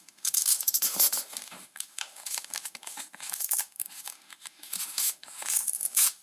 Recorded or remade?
remade